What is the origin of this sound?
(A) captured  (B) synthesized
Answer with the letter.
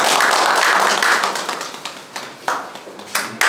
A